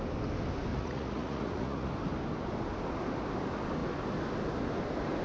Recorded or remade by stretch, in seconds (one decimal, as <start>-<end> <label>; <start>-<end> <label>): 0.0-0.7 recorded; 0.7-1.9 remade; 1.9-5.2 recorded